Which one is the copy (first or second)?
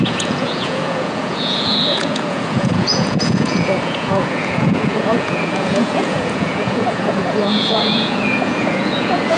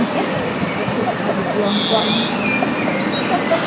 first